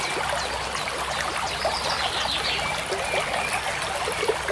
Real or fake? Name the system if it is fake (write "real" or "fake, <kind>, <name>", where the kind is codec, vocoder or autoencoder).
real